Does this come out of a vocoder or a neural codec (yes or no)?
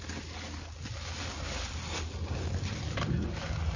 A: no